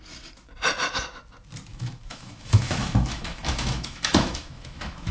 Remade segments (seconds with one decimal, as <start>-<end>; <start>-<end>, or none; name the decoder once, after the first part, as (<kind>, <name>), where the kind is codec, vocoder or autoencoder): 1.7-5.1 (autoencoder, DAC-VAE)